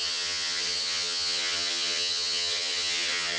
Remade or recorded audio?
remade